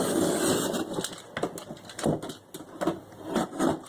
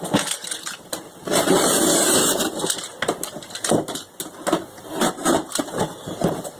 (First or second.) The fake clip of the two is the second